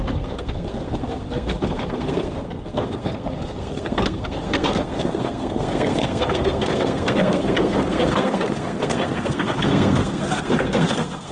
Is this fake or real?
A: fake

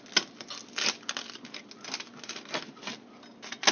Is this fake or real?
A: real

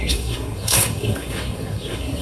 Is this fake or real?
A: fake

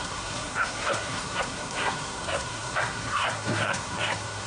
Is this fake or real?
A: fake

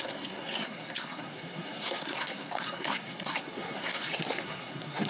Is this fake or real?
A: fake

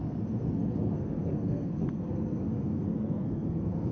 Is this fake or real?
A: fake